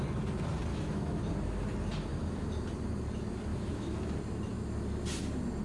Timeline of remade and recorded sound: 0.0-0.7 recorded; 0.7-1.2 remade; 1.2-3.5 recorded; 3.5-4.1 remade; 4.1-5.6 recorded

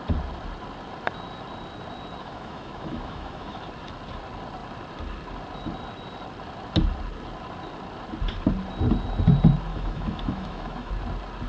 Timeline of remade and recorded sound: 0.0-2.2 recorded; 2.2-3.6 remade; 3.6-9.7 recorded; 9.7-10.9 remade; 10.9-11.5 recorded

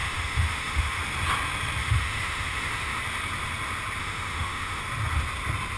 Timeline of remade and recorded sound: 0.0-1.0 remade; 1.0-1.8 recorded; 1.8-3.0 remade; 3.0-4.0 recorded; 4.0-4.8 remade; 4.8-5.8 recorded

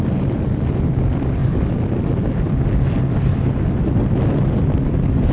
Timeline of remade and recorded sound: 0.0-5.3 recorded